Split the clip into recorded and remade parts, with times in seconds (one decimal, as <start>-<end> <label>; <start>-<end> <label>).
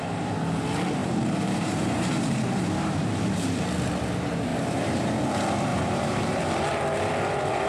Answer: 0.0-1.0 recorded; 1.0-3.1 remade; 3.1-4.5 recorded; 4.5-5.2 remade; 5.2-5.7 recorded; 5.7-6.4 remade; 6.4-7.7 recorded